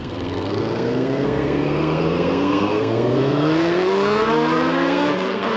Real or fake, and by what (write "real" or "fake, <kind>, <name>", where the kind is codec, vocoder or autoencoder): fake, codec, SNAC